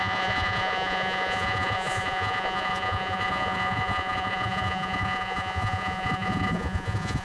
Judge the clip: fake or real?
fake